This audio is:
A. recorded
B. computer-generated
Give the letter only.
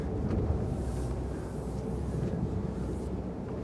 B